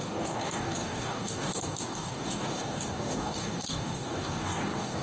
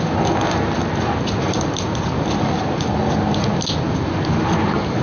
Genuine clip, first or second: second